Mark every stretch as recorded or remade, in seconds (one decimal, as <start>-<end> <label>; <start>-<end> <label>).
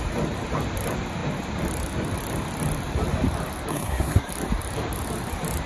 0.0-3.7 recorded; 3.7-4.3 remade; 4.3-5.7 recorded